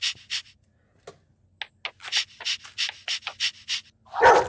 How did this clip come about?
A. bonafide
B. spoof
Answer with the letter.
A